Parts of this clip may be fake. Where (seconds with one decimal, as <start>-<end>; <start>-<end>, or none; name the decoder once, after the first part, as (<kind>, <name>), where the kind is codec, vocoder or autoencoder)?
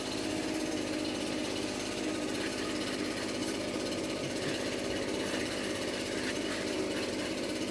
none